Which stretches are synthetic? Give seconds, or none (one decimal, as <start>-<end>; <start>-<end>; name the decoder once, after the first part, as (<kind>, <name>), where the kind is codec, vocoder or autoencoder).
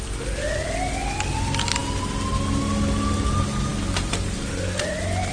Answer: none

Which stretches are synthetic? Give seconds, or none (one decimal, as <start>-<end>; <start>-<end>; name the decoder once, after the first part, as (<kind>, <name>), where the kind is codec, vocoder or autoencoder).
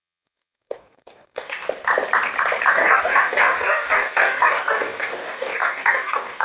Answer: 0.0-1.6 (codec, DAC); 2.7-6.4